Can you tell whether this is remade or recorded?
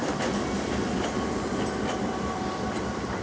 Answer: recorded